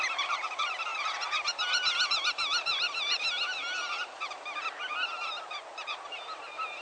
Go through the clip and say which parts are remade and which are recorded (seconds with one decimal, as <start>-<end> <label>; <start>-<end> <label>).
0.0-4.9 remade; 4.9-6.1 recorded; 6.1-6.8 remade

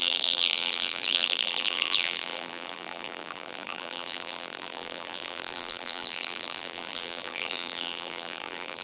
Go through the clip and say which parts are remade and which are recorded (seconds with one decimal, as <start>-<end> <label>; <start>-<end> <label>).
0.0-8.8 remade

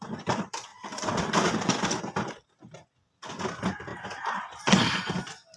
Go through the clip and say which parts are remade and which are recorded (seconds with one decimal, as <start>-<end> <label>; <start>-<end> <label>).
0.0-3.9 recorded; 3.9-5.1 remade; 5.1-5.6 recorded

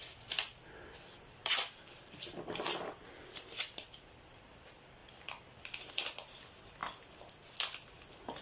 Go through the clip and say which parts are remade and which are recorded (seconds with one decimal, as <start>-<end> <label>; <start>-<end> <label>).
0.0-6.8 remade; 6.8-7.9 recorded; 7.9-8.4 remade

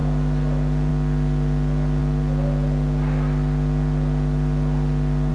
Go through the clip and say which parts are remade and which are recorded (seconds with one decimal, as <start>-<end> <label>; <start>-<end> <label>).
0.0-5.3 recorded

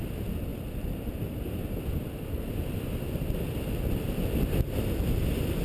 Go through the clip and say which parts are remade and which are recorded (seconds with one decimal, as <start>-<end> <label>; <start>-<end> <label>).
0.0-5.6 recorded

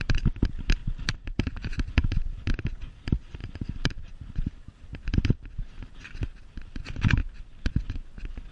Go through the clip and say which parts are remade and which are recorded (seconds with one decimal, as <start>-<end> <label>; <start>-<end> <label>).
0.0-0.8 recorded; 0.8-2.5 remade; 2.5-3.4 recorded; 3.4-6.8 remade; 6.8-8.5 recorded